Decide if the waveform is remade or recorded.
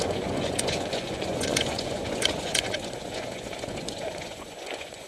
remade